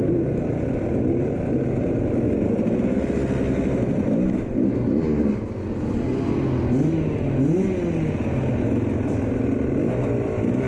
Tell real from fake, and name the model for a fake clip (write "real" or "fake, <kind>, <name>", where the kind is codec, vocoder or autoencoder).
real